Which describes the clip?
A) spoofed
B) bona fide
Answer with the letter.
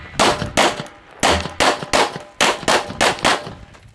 B